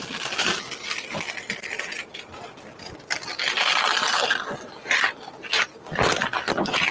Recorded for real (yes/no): yes